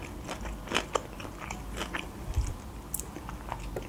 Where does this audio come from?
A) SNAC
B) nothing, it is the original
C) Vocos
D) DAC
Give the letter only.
B